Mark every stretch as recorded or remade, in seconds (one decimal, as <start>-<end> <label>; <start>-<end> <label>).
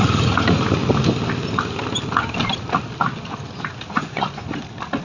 0.0-3.9 recorded; 3.9-4.5 remade; 4.5-5.0 recorded